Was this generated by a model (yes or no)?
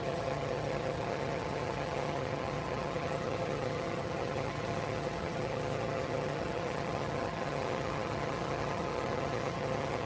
yes